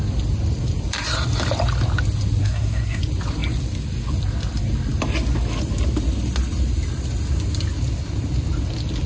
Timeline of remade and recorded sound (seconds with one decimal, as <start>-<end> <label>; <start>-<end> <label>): 0.0-2.4 recorded; 2.4-3.0 remade; 3.0-9.1 recorded